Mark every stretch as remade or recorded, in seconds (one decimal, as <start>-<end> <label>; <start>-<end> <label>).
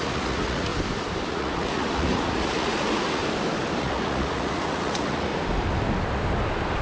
0.0-0.7 remade; 0.7-1.3 recorded; 1.3-3.2 remade; 3.2-3.8 recorded; 3.8-5.3 remade; 5.3-6.8 recorded